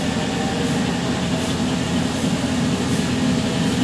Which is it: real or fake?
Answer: real